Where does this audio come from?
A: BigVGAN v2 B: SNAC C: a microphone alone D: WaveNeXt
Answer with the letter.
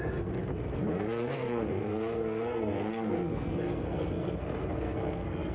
B